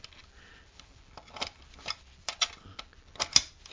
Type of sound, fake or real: real